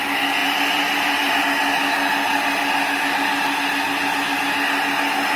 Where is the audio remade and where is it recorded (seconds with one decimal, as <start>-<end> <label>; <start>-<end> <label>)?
0.0-0.4 recorded; 0.4-1.4 remade; 1.4-5.4 recorded